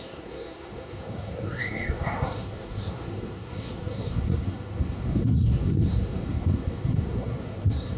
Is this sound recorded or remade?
remade